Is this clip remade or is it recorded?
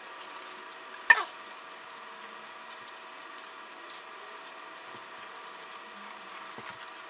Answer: recorded